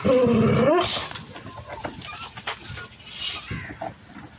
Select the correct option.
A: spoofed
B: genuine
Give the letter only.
B